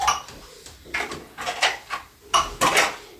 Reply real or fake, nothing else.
real